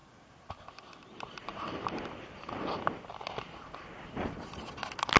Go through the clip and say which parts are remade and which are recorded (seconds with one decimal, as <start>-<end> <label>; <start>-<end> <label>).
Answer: 0.0-1.5 recorded; 1.5-2.6 remade; 2.6-5.2 recorded